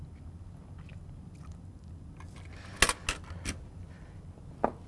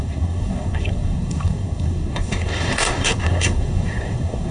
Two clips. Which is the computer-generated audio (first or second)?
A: second